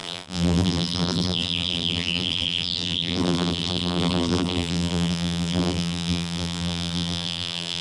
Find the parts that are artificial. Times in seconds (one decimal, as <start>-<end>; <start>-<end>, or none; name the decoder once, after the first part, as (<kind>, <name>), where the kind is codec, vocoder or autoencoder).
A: 0.0-7.8 (vocoder, BigVGAN v2)